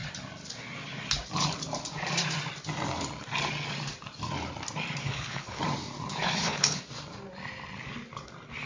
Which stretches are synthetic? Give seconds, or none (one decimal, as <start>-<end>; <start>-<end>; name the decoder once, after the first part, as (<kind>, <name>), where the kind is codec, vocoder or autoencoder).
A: 5.0-5.6 (codec, HILCodec); 6.2-6.8